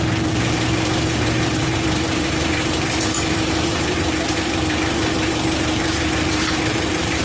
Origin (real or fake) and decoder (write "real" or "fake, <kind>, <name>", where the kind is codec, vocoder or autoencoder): fake, vocoder, BigVGAN v2